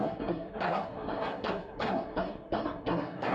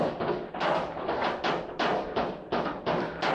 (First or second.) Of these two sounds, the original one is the second